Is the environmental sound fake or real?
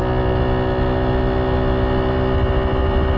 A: real